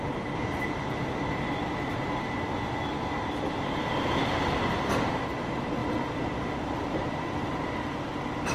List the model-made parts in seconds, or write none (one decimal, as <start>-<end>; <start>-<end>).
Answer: none